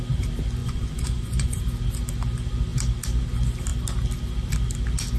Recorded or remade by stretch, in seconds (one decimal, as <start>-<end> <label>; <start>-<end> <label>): 0.0-0.6 recorded; 0.6-1.6 remade; 1.6-5.2 recorded